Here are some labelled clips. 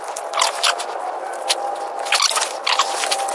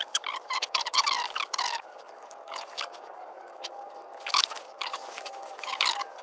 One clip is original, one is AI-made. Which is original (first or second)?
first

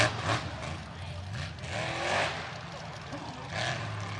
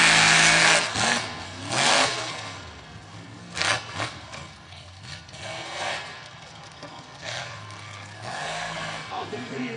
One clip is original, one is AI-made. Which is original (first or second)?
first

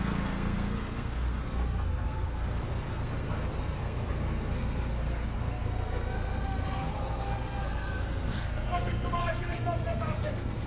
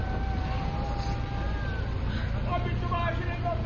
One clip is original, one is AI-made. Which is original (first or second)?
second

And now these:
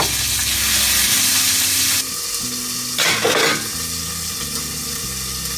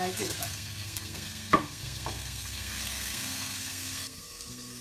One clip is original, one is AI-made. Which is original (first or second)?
first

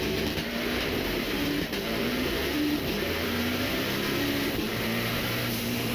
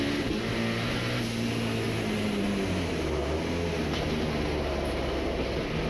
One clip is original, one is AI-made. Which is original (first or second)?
second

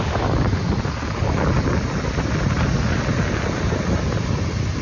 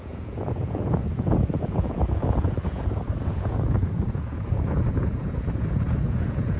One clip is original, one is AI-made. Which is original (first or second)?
first